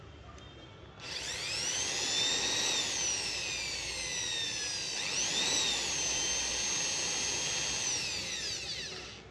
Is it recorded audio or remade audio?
recorded